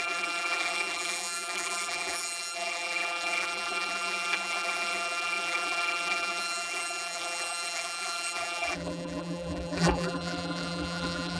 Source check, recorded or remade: remade